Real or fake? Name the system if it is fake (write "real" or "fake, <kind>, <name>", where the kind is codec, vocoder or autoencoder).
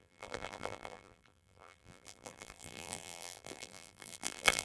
fake, vocoder, BigVGAN v2